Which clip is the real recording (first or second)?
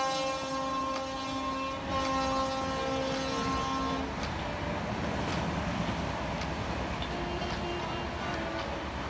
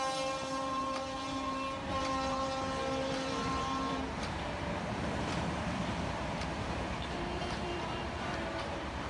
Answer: first